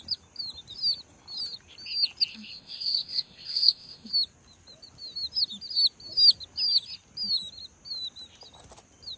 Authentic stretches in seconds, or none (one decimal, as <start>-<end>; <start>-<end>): 0.0-2.3; 4.1-9.2